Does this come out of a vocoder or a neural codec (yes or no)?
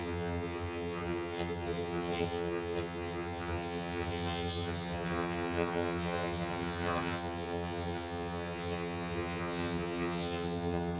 yes